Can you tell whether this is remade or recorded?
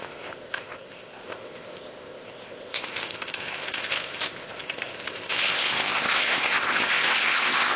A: remade